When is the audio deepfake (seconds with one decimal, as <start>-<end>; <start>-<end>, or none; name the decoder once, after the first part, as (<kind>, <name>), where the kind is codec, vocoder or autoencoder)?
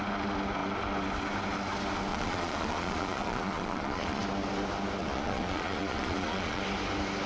2.1-4.2 (vocoder, Vocos); 5.0-6.6